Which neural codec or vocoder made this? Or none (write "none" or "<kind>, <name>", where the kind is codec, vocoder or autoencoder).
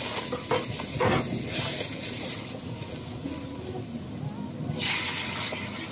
none